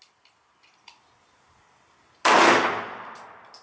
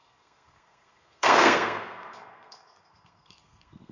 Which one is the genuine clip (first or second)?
first